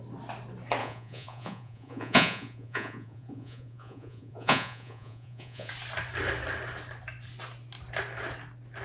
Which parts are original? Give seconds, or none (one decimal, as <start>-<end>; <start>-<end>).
0.0-0.8; 5.7-8.8